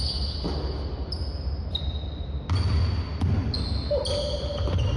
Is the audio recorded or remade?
recorded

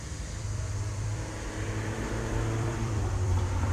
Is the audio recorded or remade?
remade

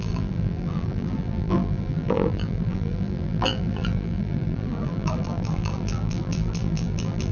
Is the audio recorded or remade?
remade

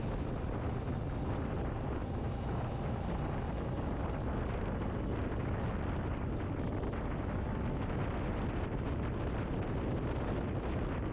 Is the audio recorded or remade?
recorded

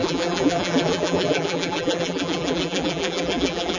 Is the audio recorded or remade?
remade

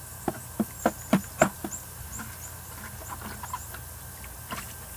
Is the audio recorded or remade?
recorded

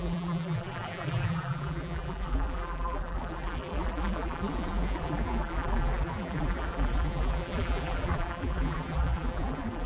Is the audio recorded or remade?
remade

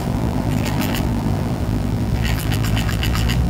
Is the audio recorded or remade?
remade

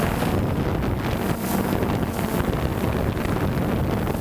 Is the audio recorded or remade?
recorded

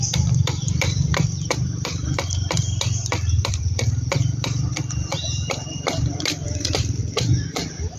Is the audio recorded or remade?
remade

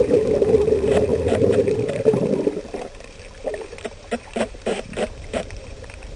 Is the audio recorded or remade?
remade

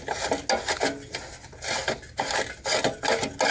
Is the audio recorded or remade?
recorded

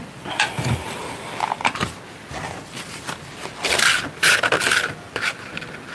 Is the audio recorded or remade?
recorded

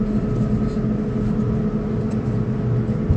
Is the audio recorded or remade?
recorded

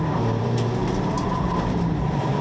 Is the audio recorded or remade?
remade